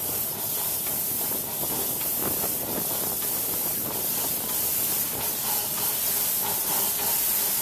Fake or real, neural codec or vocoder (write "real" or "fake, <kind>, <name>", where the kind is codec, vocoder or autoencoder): real